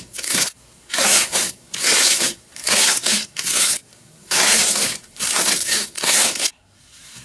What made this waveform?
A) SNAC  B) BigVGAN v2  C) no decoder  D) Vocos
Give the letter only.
A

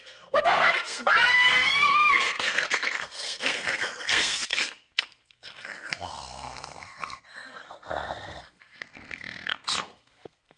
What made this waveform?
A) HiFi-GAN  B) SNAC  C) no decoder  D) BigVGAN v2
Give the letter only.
B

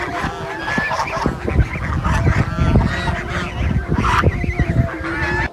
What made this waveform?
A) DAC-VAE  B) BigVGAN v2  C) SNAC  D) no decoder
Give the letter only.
D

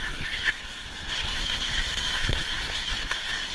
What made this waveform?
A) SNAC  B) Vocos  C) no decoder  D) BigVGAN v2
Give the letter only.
A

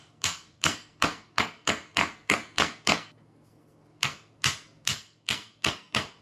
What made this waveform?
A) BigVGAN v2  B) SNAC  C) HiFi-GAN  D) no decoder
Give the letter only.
B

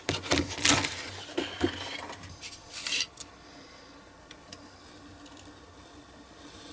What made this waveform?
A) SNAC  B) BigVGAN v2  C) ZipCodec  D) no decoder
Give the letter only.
D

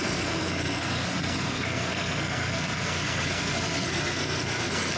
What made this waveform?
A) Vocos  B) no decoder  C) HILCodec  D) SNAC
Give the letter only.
D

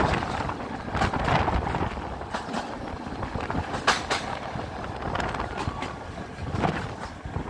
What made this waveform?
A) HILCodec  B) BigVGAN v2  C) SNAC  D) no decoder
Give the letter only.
D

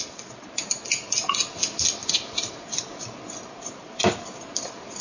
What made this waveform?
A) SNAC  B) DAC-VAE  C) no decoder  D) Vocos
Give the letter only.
C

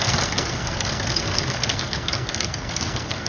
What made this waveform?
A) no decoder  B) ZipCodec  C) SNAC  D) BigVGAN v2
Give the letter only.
C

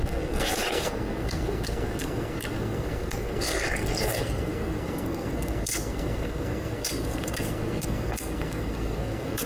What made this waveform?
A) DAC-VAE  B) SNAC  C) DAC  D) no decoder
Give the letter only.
B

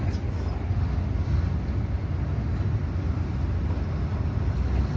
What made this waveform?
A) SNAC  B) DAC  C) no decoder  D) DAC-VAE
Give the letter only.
C